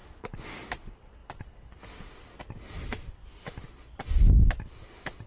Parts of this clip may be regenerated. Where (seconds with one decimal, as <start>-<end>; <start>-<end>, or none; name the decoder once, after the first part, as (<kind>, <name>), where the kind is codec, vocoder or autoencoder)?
0.0-0.5 (vocoder, BigVGAN v2)